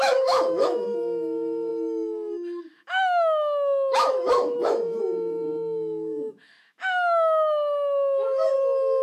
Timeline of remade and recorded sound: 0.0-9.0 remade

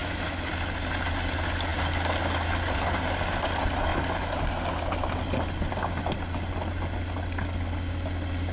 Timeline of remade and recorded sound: 0.0-0.5 remade; 0.5-8.5 recorded

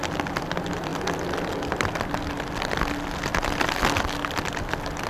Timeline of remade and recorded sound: 0.0-5.1 recorded

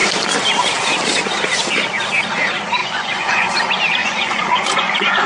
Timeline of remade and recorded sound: 0.0-2.8 recorded; 2.8-3.5 remade; 3.5-4.0 recorded; 4.0-5.3 remade

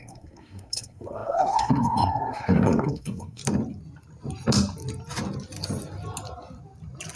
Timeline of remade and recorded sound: 0.0-3.4 remade; 3.4-7.2 recorded

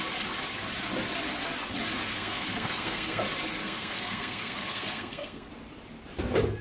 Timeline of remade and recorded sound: 0.0-2.1 recorded; 2.1-3.2 remade; 3.2-3.6 recorded; 3.6-5.5 remade; 5.5-6.6 recorded

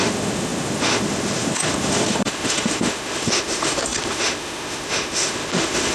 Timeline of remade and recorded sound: 0.0-5.9 remade